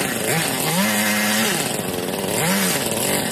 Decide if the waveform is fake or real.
real